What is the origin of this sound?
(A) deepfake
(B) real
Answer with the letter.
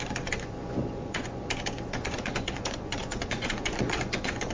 A